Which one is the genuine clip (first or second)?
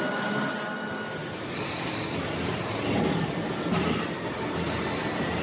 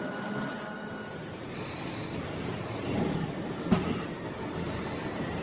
first